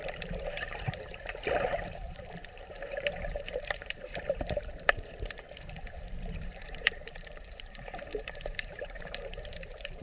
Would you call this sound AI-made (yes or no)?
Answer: yes